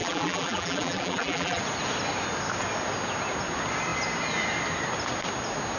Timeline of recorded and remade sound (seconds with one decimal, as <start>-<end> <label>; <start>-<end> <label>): 0.0-1.6 remade; 1.6-5.8 recorded